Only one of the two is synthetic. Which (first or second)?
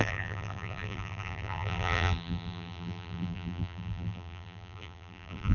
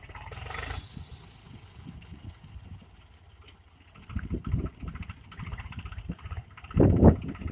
first